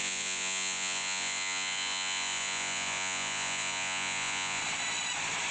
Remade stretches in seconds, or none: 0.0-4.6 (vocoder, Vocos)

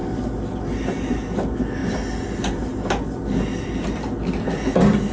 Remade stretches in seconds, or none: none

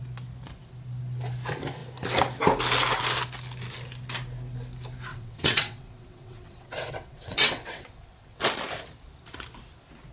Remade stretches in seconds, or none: 5.1-8.4 (vocoder, WaveNeXt)

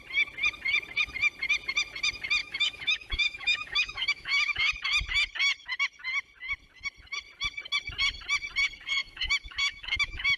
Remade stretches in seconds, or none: 2.4-4.7 (autoencoder, DAC-VAE); 9.0-10.4

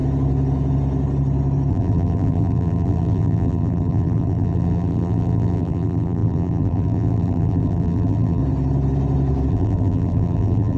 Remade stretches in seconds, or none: 1.7-8.4 (vocoder, BigVGAN v2); 9.5-10.8

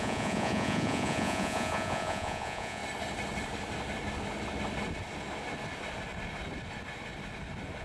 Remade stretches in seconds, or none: 0.0-2.8 (vocoder, Vocos)